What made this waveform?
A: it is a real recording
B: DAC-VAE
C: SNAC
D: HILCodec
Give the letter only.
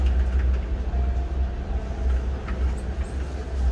A